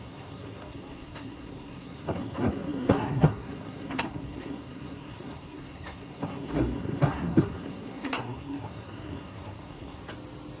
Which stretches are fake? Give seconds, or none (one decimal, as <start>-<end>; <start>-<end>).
0.0-10.0